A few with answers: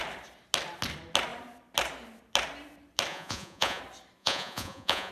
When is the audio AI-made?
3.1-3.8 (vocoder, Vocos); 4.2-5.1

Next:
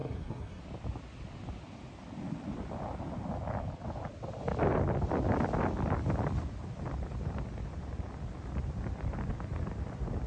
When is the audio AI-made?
0.0-0.6 (codec, SNAC)

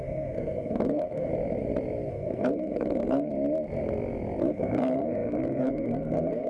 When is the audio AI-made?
0.0-1.3 (codec, SNAC); 2.1-3.3; 4.4-6.5

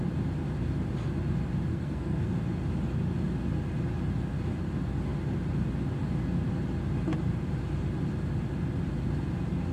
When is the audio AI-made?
1.7-2.3 (codec, SNAC)

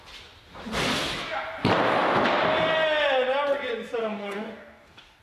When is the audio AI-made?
4.0-5.2 (codec, DAC)

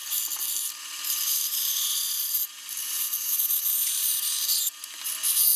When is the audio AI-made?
0.8-5.6 (vocoder, BigVGAN v2)

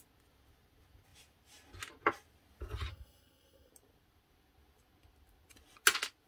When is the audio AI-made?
2.9-3.7 (codec, SNAC)